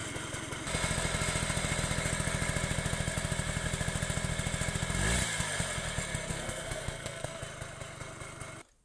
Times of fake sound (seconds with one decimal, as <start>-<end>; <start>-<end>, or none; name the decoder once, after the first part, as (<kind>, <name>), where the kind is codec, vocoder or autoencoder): 6.3-7.4 (codec, SNAC)